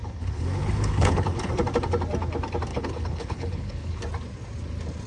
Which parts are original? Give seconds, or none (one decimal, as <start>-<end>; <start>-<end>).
1.5-2.7; 4.0-5.1